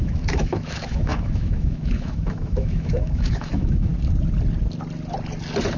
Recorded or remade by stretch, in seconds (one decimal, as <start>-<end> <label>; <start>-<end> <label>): 0.0-3.9 remade; 3.9-5.8 recorded